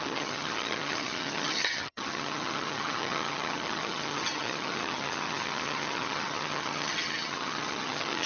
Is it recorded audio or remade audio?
remade